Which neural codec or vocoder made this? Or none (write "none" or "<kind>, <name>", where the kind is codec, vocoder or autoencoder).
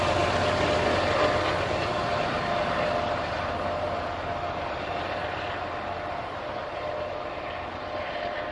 none